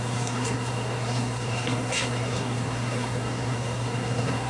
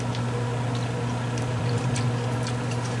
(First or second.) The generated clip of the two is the first